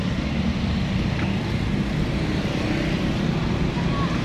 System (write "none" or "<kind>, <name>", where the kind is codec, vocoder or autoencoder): none